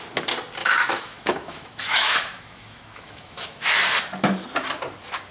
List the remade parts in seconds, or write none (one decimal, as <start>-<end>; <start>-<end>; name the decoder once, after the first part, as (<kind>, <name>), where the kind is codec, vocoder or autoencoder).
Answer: 0.6-3.7 (autoencoder, DAC-VAE)